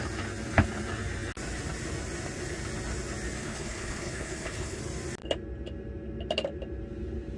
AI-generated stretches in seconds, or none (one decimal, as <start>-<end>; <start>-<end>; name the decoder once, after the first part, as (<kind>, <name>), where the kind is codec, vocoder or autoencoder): 3.4-4.8 (codec, HILCodec)